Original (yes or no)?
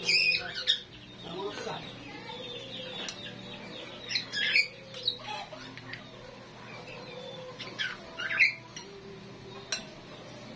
yes